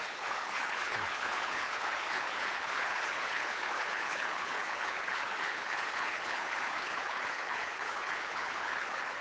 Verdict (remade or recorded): remade